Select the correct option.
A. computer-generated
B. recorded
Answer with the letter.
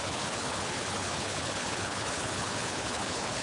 A